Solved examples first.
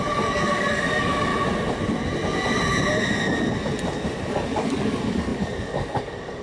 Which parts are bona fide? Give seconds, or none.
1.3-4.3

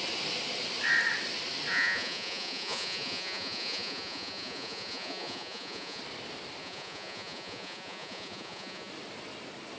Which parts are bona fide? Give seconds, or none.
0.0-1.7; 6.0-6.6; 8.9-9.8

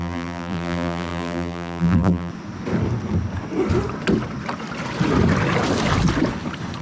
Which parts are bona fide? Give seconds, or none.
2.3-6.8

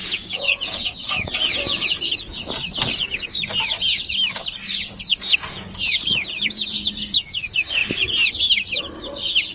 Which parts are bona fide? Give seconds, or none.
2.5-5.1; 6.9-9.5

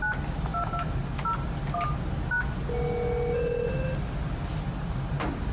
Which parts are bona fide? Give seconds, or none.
0.0-5.5

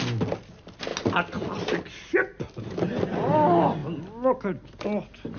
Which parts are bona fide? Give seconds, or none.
0.0-5.4

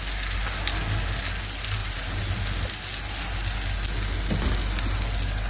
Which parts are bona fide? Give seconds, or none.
0.0-1.8; 2.3-5.5